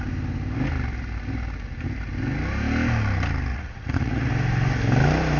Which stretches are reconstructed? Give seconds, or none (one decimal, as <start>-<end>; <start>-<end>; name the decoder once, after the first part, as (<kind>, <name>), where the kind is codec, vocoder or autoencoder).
3.5-4.3 (vocoder, Vocos)

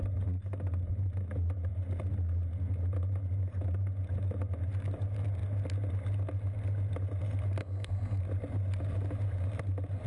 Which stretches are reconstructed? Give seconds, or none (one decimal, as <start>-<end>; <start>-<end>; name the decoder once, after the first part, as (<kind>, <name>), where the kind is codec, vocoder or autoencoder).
7.6-8.2 (codec, SNAC)

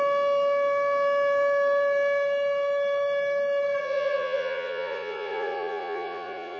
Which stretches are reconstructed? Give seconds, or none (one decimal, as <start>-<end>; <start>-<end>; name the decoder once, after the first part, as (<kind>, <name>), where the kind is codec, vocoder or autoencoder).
3.8-6.6 (vocoder, Vocos)